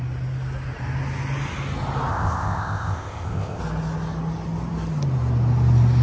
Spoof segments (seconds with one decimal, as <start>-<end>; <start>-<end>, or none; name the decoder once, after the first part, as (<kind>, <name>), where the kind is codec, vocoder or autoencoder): 2.1-3.6 (codec, ZipCodec)